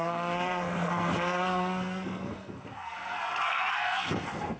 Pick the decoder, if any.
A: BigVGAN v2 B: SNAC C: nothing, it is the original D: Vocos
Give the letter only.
B